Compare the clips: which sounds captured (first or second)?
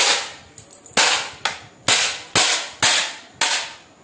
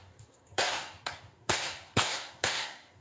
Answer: first